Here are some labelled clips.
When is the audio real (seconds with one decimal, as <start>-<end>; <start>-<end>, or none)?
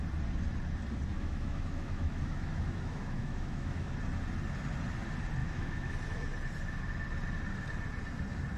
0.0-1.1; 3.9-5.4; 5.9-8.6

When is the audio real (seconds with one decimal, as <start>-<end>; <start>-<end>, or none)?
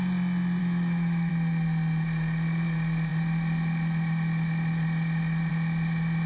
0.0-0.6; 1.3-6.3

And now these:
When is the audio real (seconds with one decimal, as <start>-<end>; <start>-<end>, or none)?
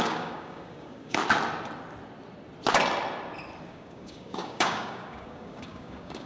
1.2-3.7